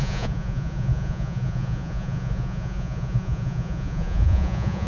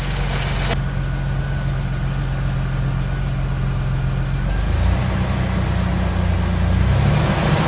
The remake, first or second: first